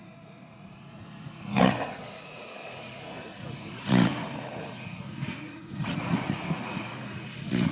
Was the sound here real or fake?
fake